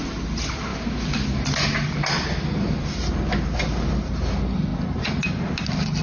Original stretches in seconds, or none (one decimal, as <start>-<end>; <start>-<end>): 0.0-6.0